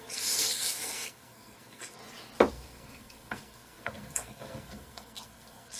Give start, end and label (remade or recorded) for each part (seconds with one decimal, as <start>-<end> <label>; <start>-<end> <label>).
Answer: 0.0-2.0 remade; 2.0-2.5 recorded; 2.5-5.8 remade